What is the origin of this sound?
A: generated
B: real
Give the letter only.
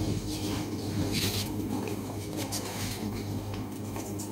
A